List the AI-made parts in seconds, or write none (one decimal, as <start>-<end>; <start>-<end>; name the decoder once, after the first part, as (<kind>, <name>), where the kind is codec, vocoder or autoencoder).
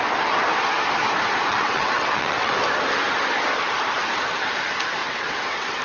1.5-2.5 (vocoder, WaveNeXt); 5.0-5.8